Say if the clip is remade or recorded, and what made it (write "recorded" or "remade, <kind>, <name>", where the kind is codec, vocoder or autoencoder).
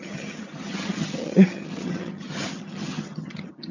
remade, vocoder, HiFi-GAN